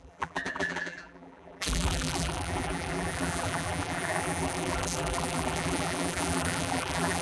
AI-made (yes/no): yes